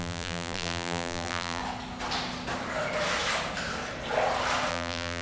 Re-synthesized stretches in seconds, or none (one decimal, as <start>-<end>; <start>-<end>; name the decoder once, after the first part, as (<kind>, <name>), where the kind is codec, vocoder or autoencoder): 0.0-1.6 (vocoder, BigVGAN v2); 4.7-5.2